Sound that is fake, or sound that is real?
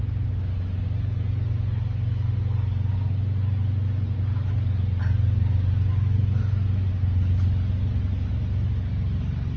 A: real